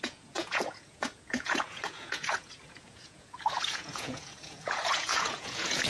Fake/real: fake